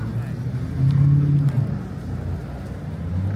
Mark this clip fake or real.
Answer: real